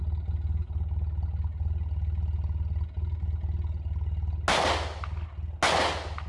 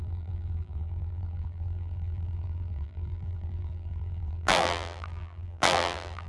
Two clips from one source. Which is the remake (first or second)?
second